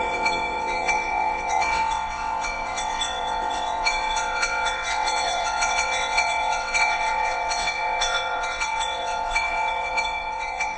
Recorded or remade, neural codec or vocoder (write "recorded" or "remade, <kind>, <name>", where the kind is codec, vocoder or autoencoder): remade, vocoder, WaveNeXt